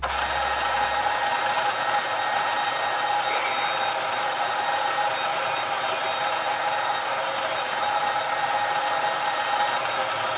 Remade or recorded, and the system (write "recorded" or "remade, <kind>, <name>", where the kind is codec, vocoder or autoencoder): recorded